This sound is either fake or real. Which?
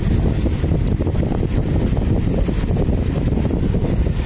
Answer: real